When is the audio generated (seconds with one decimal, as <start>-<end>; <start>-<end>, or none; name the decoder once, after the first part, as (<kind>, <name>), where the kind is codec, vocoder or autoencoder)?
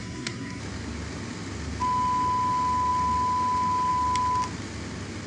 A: 0.0-0.6 (codec, SNAC)